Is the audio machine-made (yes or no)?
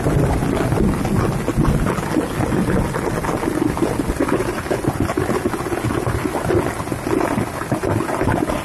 no